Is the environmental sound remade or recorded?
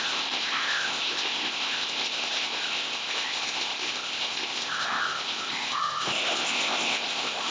remade